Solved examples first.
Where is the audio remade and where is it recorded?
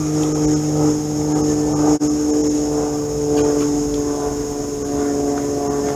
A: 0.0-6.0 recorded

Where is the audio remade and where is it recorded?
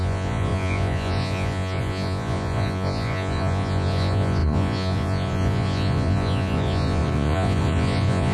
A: 0.0-8.3 remade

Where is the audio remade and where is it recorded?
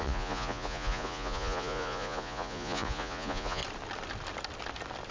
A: 0.0-3.6 remade; 3.6-5.1 recorded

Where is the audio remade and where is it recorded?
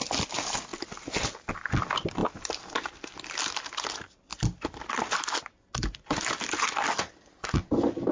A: 0.0-8.1 recorded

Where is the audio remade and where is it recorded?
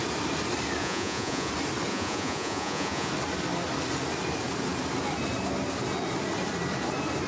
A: 0.0-0.8 recorded; 0.8-1.5 remade; 1.5-1.9 recorded; 1.9-3.1 remade; 3.1-7.3 recorded